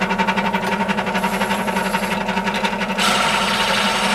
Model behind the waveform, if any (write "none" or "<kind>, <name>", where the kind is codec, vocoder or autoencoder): none